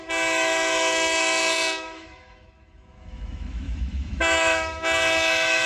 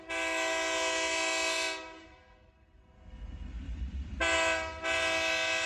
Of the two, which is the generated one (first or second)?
first